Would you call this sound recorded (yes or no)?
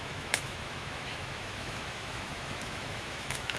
no